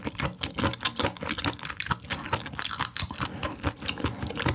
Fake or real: real